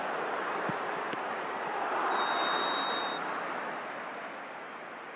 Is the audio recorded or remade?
recorded